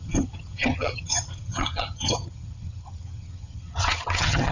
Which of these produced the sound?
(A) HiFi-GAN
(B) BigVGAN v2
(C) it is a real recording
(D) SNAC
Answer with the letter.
A